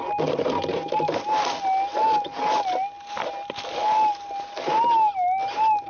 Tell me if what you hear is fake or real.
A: real